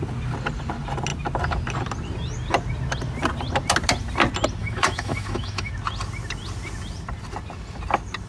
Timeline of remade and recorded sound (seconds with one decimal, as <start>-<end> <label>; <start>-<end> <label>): 0.0-4.6 recorded; 4.6-5.7 remade; 5.7-8.3 recorded